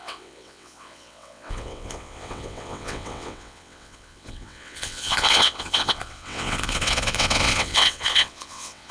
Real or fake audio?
fake